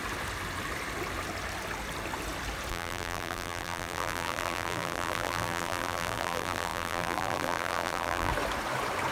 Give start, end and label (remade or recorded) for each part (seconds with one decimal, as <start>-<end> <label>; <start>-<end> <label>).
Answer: 0.0-2.7 recorded; 2.7-8.3 remade; 8.3-9.1 recorded